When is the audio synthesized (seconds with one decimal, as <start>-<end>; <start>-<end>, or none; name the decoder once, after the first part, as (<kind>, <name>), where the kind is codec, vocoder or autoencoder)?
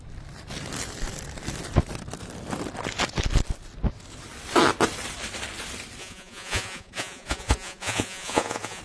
6.0-8.8 (vocoder, Vocos)